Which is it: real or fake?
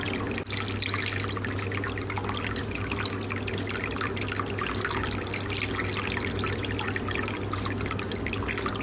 real